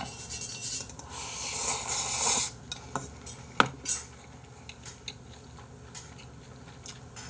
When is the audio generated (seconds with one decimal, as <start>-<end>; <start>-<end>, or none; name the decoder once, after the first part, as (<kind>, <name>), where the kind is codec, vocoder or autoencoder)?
0.6-1.4 (vocoder, BigVGAN v2)